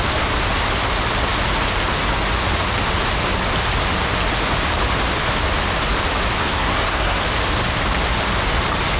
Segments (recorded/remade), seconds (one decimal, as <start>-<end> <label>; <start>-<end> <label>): 0.0-6.4 recorded; 6.4-7.2 remade; 7.2-9.0 recorded